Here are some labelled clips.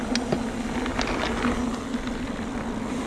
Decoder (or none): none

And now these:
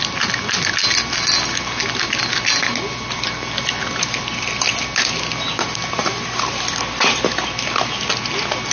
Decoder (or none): none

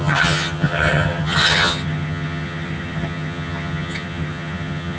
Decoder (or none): vocoder, HiFi-GAN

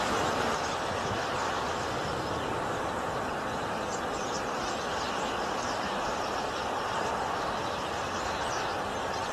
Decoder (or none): vocoder, BigVGAN v2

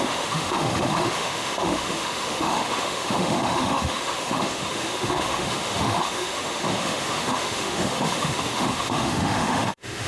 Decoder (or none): autoencoder, DAC-VAE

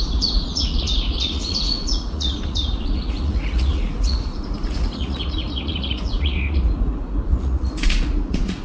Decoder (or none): vocoder, Vocos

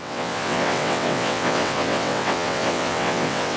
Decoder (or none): vocoder, WaveNeXt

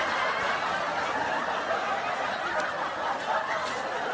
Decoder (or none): vocoder, BigVGAN v2